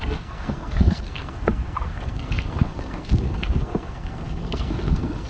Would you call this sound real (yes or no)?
no